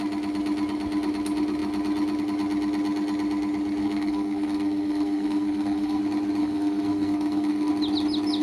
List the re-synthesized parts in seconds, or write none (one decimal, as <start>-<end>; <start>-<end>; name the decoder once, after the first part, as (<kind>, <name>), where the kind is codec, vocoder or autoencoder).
3.8-6.0 (codec, SNAC); 6.4-7.7